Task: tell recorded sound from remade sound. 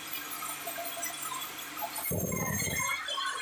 recorded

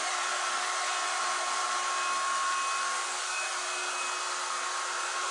recorded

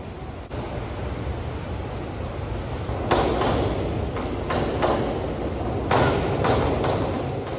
recorded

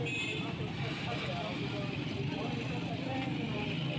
recorded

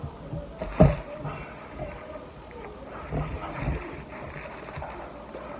recorded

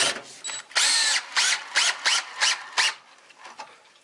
recorded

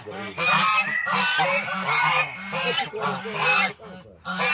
recorded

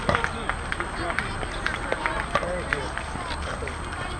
recorded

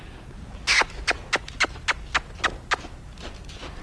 recorded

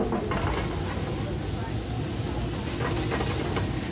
recorded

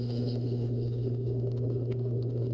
remade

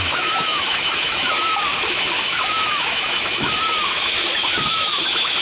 remade